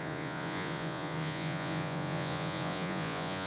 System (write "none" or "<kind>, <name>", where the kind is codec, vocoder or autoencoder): vocoder, Vocos